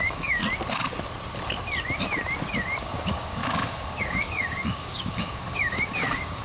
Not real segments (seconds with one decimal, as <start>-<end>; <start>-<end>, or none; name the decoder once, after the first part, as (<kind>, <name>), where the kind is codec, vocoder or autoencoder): 0.0-0.4 (codec, DAC); 2.8-6.4